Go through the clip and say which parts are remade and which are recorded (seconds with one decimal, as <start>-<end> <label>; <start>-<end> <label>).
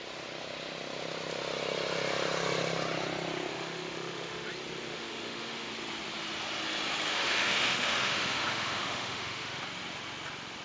0.0-3.5 recorded; 3.5-4.5 remade; 4.5-4.9 recorded; 4.9-5.7 remade; 5.7-7.1 recorded; 7.1-9.6 remade; 9.6-10.6 recorded